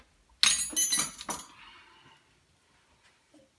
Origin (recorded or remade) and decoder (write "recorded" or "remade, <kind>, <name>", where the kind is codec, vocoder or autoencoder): recorded